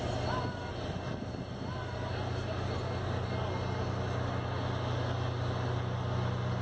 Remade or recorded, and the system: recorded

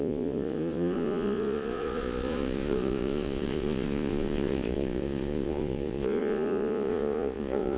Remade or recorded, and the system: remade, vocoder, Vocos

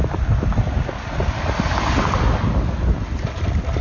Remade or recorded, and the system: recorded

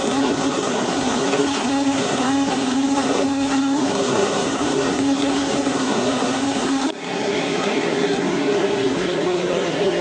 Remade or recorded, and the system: remade, codec, SNAC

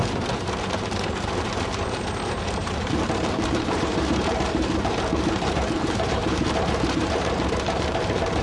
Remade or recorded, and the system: remade, vocoder, BigVGAN v2